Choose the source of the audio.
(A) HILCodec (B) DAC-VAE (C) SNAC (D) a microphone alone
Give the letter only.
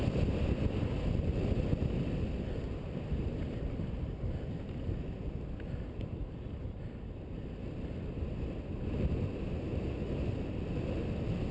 D